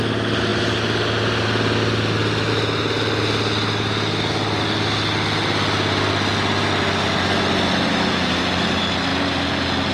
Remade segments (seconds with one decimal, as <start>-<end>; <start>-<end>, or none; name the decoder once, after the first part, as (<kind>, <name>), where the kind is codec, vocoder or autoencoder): 7.9-8.4 (autoencoder, DAC-VAE)